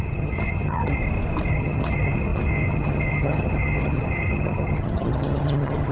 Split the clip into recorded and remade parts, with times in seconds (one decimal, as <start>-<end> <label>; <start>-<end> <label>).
0.0-1.0 remade; 1.0-1.5 recorded; 1.5-5.9 remade